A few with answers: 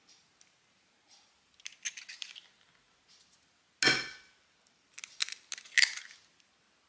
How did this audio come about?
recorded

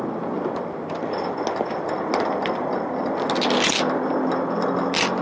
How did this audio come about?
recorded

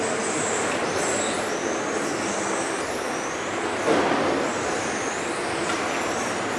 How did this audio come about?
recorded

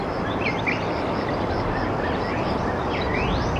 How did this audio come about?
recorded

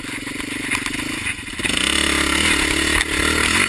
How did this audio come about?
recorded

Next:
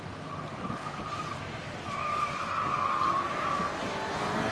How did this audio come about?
recorded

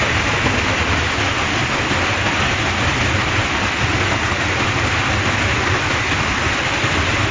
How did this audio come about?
recorded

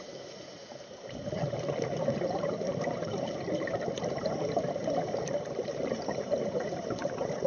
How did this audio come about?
remade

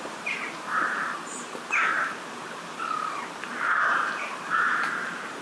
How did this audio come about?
remade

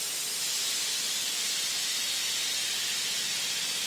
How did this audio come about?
recorded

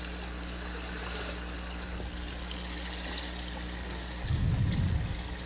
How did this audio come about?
recorded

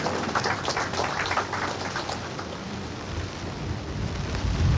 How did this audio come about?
remade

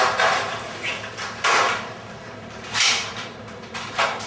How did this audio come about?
remade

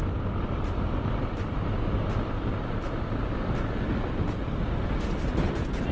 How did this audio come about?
recorded